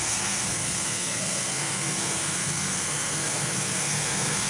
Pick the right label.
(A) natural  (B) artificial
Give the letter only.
B